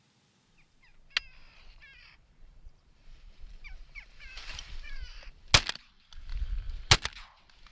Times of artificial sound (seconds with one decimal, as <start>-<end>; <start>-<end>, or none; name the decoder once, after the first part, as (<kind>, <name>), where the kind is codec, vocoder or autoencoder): 1.8-5.5 (vocoder, BigVGAN v2)